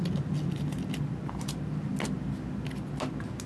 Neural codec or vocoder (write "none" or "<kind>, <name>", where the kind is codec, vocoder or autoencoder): none